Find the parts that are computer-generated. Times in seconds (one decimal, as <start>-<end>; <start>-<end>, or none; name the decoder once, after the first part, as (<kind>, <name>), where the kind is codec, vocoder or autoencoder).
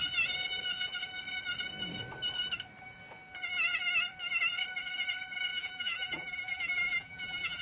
5.5-7.6 (vocoder, BigVGAN v2)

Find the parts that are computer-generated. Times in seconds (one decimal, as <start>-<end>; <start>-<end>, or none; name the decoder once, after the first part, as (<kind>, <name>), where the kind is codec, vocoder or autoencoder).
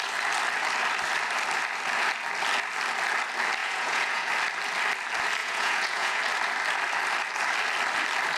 3.6-4.3 (vocoder, Vocos); 5.4-6.2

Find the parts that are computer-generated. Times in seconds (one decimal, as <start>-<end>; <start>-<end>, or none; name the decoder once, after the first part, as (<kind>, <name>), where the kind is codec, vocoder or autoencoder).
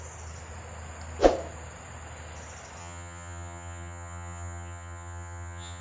2.8-5.8 (vocoder, HiFi-GAN)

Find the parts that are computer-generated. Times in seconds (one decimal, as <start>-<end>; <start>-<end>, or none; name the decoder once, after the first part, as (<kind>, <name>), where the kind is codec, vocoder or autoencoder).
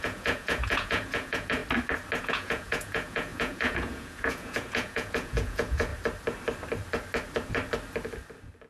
0.0-1.6 (vocoder, Vocos); 2.2-5.9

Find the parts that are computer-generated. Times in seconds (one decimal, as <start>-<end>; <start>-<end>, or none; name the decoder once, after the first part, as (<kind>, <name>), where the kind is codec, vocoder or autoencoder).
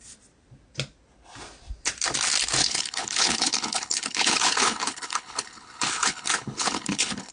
2.6-7.3 (codec, HILCodec)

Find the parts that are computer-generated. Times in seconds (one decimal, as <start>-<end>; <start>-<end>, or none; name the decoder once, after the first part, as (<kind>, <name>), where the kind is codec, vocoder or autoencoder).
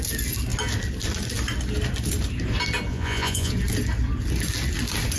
2.9-3.5 (vocoder, Vocos)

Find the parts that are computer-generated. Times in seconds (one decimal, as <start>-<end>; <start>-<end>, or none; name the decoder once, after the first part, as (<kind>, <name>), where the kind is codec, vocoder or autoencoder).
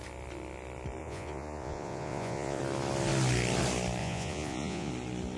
1.0-2.6 (vocoder, Vocos); 4.0-4.9